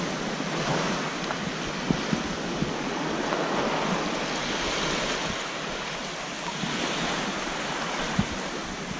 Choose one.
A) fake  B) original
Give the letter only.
B